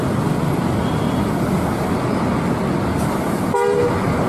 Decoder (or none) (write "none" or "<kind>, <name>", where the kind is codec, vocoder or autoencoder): none